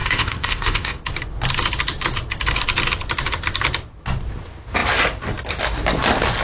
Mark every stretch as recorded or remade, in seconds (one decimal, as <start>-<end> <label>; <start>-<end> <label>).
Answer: 0.0-1.0 remade; 1.0-6.4 recorded